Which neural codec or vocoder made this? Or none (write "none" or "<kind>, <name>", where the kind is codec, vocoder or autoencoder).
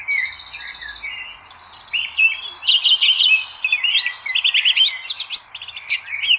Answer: none